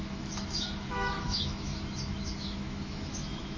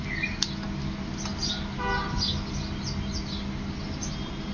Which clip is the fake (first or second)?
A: first